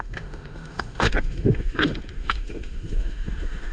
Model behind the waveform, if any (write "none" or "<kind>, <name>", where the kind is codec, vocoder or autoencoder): autoencoder, DAC-VAE